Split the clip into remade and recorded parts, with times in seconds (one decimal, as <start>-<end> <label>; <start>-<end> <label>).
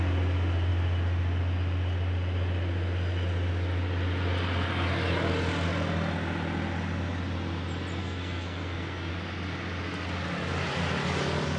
0.0-8.0 recorded; 8.0-9.1 remade; 9.1-11.6 recorded